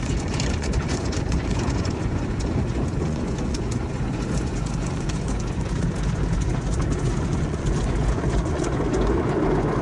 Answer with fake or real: fake